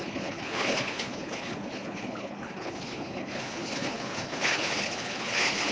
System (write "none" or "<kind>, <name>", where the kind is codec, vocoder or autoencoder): codec, HILCodec